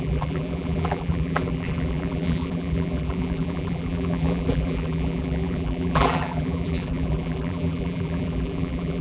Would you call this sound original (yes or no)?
no